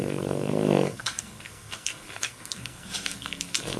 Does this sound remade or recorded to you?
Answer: remade